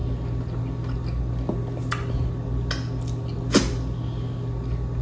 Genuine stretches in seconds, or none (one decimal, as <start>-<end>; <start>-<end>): 0.0-5.0

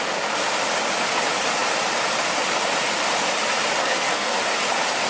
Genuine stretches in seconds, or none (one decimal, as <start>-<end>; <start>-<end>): 0.0-3.8; 4.4-5.1

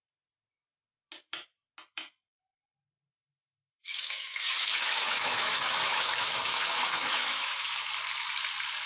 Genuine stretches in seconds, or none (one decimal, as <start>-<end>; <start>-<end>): 0.0-3.1; 7.9-8.9

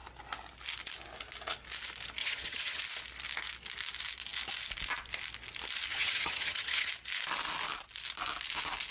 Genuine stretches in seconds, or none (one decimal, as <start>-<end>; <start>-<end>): 0.0-2.2; 2.8-5.9; 6.9-8.9

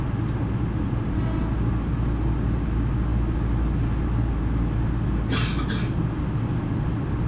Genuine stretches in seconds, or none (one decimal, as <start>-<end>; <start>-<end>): 0.0-7.3

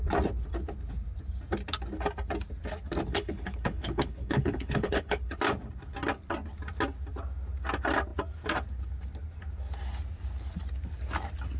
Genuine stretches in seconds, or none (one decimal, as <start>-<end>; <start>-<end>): 0.0-3.1; 5.4-11.6

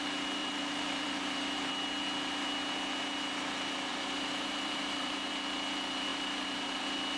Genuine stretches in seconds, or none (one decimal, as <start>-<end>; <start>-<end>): 0.0-0.4; 1.7-3.9; 5.3-6.1; 6.8-7.2

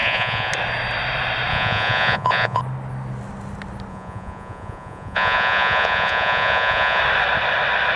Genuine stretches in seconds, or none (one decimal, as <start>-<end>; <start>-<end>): 0.5-1.5; 2.6-3.9; 7.0-8.0